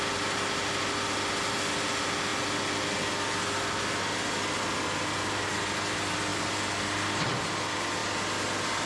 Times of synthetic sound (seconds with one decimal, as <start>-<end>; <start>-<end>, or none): none